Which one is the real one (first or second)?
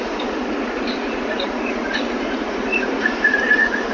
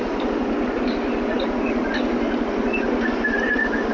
second